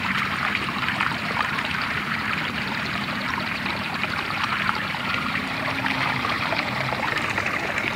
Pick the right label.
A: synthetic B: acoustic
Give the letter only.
A